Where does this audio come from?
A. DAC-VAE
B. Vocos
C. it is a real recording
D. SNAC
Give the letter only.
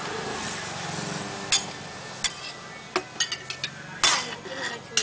C